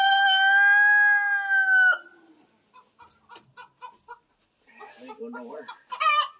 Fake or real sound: real